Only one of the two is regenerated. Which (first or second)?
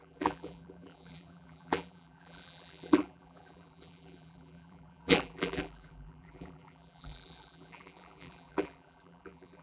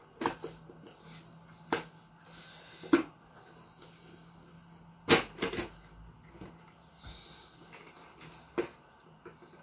first